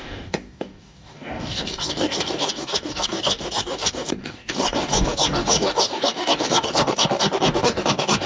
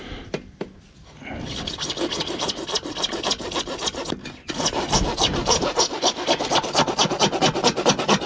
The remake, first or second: first